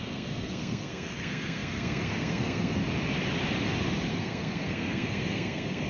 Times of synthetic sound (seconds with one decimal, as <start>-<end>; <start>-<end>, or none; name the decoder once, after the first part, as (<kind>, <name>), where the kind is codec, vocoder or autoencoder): 0.0-2.8 (codec, SNAC); 4.1-5.9